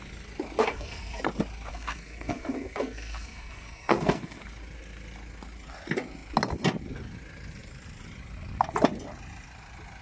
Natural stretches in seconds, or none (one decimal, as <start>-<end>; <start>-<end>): 0.0-0.6; 1.2-1.7; 4.4-10.0